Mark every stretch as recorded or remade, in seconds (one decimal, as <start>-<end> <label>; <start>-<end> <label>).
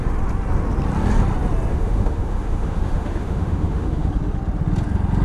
0.0-1.7 recorded; 1.7-4.1 remade; 4.1-5.2 recorded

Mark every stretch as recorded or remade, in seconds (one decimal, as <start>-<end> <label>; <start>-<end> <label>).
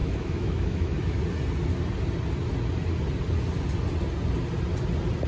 0.0-1.2 remade; 1.2-5.3 recorded